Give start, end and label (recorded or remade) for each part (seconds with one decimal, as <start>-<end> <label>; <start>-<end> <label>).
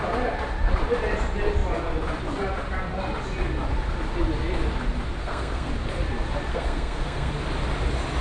0.0-5.2 recorded; 5.2-5.7 remade; 5.7-6.5 recorded; 6.5-7.3 remade; 7.3-8.2 recorded